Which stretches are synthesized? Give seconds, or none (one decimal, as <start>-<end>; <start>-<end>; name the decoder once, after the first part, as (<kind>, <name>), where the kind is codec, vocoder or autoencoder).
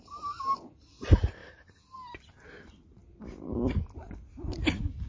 none